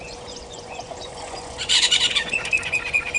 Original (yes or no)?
no